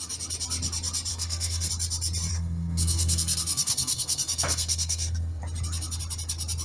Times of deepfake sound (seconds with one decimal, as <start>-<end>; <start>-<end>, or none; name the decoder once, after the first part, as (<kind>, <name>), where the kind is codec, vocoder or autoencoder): 1.1-1.7 (codec, SNAC); 2.3-5.4